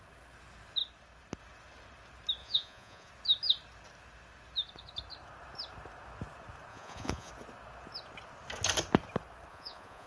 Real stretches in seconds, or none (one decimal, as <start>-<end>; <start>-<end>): 0.0-2.4; 3.1-6.7; 7.3-9.5